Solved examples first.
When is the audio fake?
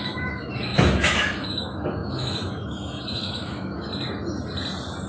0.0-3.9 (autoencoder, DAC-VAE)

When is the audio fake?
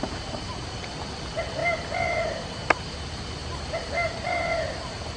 none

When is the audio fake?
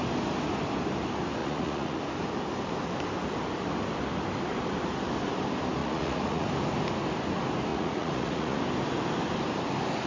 1.4-2.0 (vocoder, Vocos); 5.8-6.5; 7.7-8.6